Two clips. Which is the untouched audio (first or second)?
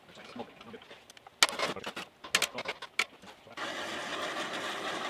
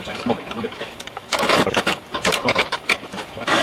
first